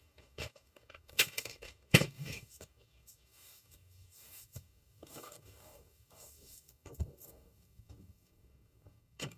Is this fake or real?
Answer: fake